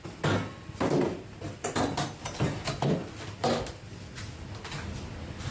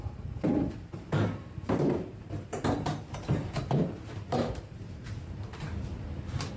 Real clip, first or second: first